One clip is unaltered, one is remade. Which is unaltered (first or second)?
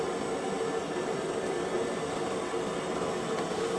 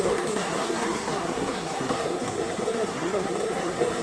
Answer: first